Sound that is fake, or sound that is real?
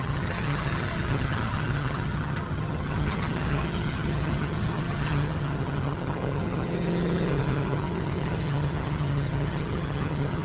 fake